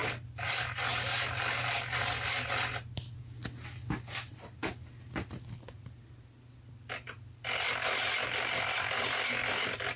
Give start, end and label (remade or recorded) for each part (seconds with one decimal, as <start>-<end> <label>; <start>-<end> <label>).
0.0-10.0 recorded